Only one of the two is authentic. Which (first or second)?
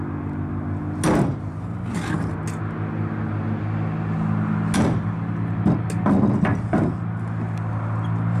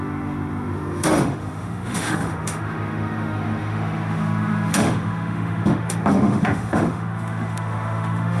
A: first